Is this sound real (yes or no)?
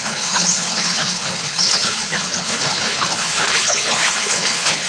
no